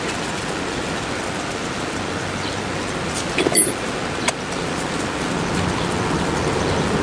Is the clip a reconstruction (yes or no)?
no